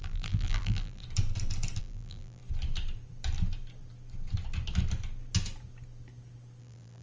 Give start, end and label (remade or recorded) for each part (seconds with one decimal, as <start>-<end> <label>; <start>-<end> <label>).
0.0-1.0 remade; 1.0-1.8 recorded; 1.8-2.4 remade; 2.4-6.6 recorded; 6.6-7.0 remade